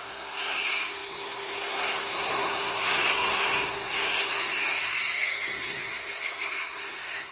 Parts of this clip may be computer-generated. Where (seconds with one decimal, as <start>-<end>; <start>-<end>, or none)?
0.0-7.3